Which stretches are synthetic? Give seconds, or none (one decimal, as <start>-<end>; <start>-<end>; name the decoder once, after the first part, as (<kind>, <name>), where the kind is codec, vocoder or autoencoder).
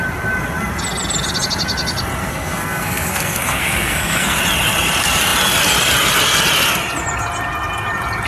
2.2-4.4 (codec, SNAC)